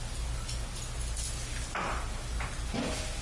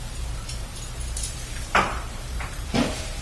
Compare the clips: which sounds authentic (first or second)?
first